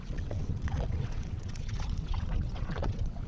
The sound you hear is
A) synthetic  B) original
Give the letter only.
A